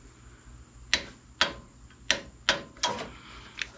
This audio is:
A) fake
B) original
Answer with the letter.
B